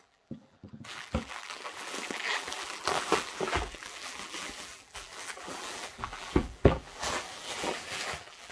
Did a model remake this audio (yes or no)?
yes